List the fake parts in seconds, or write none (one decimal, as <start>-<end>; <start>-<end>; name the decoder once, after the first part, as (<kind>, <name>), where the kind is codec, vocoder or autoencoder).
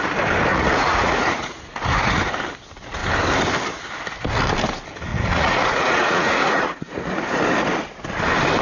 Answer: 0.5-1.6 (vocoder, Vocos); 5.1-7.2